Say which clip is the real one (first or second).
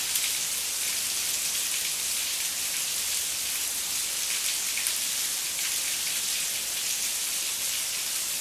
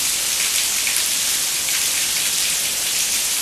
first